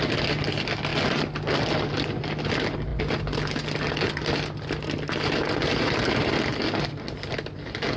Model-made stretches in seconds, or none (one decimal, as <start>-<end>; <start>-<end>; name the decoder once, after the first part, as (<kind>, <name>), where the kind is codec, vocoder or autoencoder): none

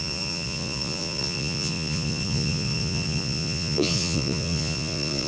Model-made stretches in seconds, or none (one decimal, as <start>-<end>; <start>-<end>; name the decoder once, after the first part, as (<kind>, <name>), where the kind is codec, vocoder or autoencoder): 0.0-5.3 (vocoder, Vocos)

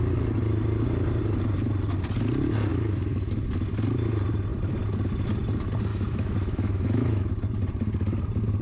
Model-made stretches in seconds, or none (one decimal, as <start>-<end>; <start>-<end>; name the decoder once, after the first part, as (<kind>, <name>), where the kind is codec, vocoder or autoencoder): 2.7-3.3 (autoencoder, DAC-VAE); 5.9-7.3

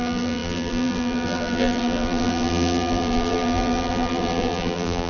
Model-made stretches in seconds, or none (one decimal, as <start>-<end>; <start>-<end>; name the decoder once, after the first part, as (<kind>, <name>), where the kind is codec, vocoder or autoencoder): 0.0-5.1 (vocoder, BigVGAN v2)

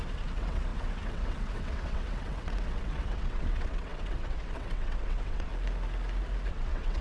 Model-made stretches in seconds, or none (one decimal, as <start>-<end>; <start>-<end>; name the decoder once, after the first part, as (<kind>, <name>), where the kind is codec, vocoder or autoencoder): 0.0-5.5 (vocoder, WaveNeXt); 6.5-7.0

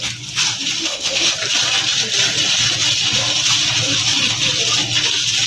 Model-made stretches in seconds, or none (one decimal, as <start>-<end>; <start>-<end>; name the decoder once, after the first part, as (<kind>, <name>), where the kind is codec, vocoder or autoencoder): 0.8-1.3 (autoencoder, DAC-VAE)

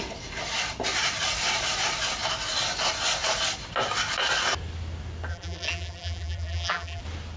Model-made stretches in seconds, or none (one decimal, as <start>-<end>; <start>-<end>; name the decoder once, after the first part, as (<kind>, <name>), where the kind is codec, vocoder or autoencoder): 5.3-7.0 (vocoder, BigVGAN v2)